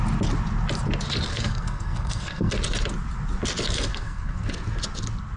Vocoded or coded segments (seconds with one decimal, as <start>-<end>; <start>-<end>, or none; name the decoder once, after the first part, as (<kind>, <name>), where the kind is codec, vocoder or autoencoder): 1.3-2.5 (codec, SNAC); 3.9-4.5